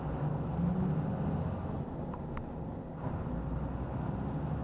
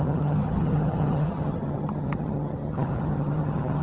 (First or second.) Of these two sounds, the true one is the first